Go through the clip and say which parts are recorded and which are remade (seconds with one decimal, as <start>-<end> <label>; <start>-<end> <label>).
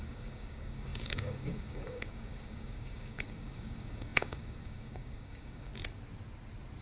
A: 0.0-5.7 remade; 5.7-6.8 recorded